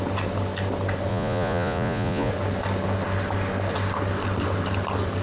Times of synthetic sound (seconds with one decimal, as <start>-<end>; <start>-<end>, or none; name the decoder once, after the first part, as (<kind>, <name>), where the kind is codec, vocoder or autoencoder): 1.1-2.3 (vocoder, Vocos)